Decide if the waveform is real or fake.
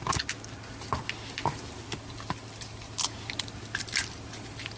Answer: real